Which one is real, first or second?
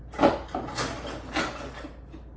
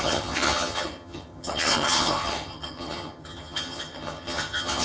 first